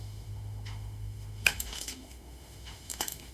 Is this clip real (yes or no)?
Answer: no